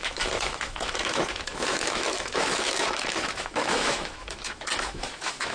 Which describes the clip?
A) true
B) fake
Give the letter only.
B